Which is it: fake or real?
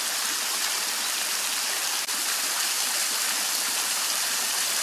real